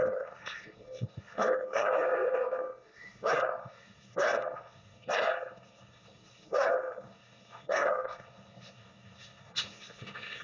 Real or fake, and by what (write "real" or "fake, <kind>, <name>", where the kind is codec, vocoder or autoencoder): fake, codec, SNAC